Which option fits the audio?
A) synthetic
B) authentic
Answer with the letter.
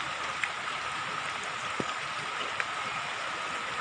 B